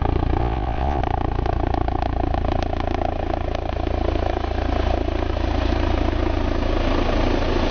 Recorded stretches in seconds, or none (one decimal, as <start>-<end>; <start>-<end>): 0.0-0.4; 1.0-7.7